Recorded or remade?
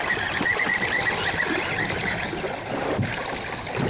recorded